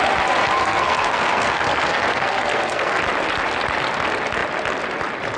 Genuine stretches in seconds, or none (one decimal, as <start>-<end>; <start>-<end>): 0.0-0.4; 3.0-5.4